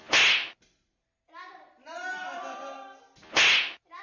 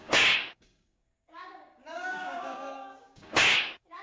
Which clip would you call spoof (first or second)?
second